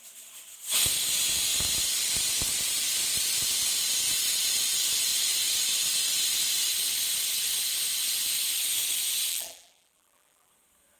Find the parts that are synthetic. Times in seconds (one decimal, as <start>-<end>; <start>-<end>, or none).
9.3-10.5